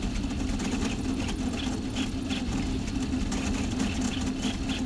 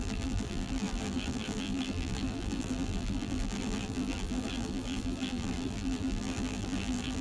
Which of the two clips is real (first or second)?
first